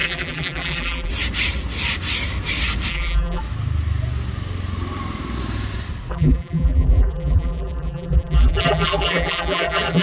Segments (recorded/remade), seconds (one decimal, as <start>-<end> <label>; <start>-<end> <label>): 0.0-1.1 remade; 1.1-2.9 recorded; 2.9-3.4 remade; 3.4-6.1 recorded; 6.1-10.0 remade